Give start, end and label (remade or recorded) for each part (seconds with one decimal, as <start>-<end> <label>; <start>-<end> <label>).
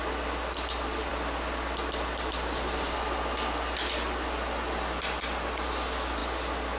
0.0-6.8 recorded